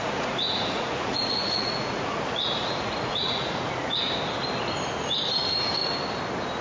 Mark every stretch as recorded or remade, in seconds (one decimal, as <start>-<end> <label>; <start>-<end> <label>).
0.0-4.0 remade; 4.0-6.6 recorded